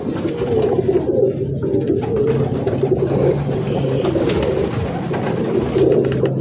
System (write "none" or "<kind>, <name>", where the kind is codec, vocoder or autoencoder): none